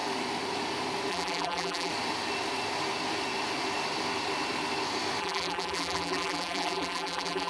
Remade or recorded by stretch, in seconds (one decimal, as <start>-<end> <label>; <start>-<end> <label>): 0.0-1.1 recorded; 1.1-1.9 remade; 1.9-5.2 recorded; 5.2-7.5 remade